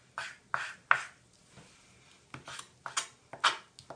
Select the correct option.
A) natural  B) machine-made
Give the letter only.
A